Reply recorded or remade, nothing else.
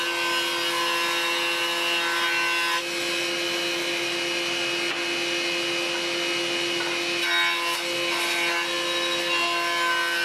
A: recorded